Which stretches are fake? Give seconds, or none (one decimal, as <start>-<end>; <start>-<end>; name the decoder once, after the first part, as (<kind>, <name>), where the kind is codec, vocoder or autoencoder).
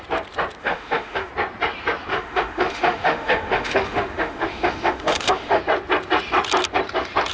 0.6-1.3 (autoencoder, DAC-VAE); 2.1-5.6